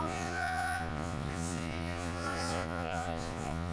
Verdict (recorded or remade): remade